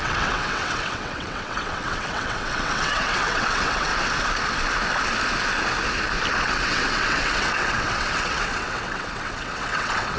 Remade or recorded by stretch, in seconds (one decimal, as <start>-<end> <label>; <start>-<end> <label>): 0.0-3.9 remade; 3.9-6.4 recorded; 6.4-10.2 remade